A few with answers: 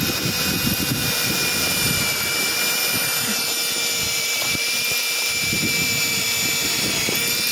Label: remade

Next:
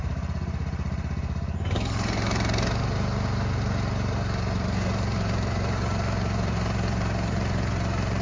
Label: remade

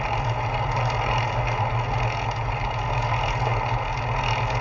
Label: recorded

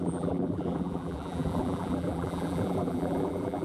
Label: remade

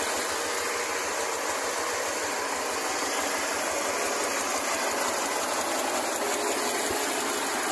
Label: recorded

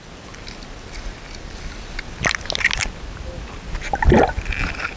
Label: recorded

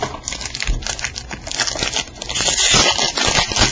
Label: recorded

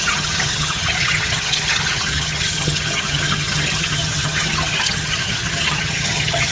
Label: remade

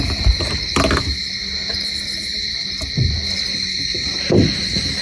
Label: recorded